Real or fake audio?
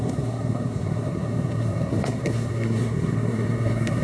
fake